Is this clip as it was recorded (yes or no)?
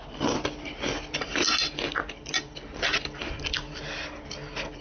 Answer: yes